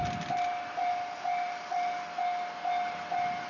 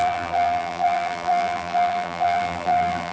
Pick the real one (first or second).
first